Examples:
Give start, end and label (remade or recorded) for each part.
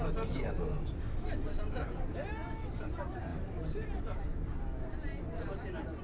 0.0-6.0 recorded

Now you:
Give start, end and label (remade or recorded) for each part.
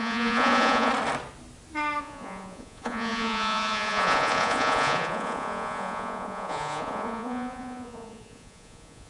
0.0-0.9 remade; 0.9-2.0 recorded; 2.0-9.1 remade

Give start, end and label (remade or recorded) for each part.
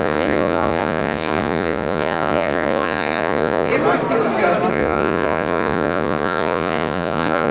0.0-3.7 remade; 3.7-4.7 recorded; 4.7-7.5 remade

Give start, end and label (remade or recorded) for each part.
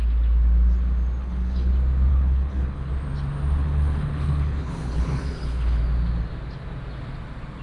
0.0-1.2 recorded; 1.2-1.7 remade; 1.7-2.1 recorded; 2.1-2.9 remade; 2.9-3.6 recorded; 3.6-5.8 remade; 5.8-7.6 recorded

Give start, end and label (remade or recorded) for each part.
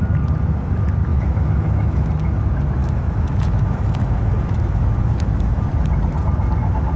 0.0-1.1 recorded; 1.1-2.1 remade; 2.1-2.8 recorded; 2.8-5.6 remade; 5.6-7.0 recorded